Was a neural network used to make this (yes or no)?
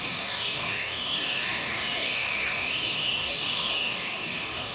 yes